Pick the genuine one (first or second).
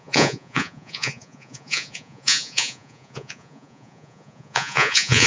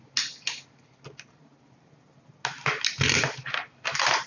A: second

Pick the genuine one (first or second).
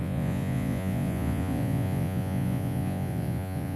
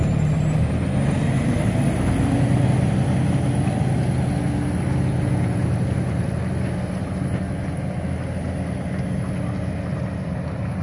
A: second